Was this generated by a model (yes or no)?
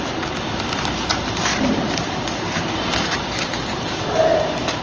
no